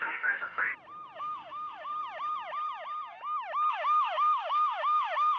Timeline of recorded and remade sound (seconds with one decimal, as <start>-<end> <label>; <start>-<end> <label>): 0.0-0.7 remade; 0.7-1.2 recorded; 1.2-1.9 remade; 1.9-3.7 recorded; 3.7-5.4 remade